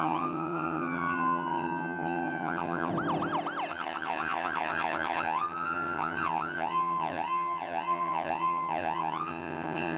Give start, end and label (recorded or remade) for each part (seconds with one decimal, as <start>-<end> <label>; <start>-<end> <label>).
0.0-2.9 remade; 2.9-3.7 recorded; 3.7-10.0 remade